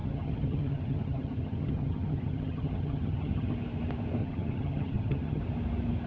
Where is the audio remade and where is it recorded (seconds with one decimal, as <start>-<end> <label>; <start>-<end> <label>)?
0.0-3.5 remade; 3.5-4.2 recorded; 4.2-5.4 remade; 5.4-6.1 recorded